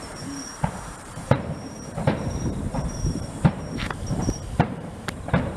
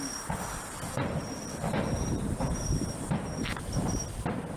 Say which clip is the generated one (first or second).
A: first